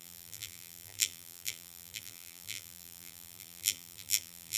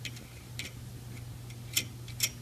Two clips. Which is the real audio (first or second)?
second